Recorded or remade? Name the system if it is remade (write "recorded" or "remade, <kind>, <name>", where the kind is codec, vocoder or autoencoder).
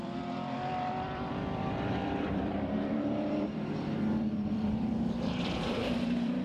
remade, vocoder, BigVGAN v2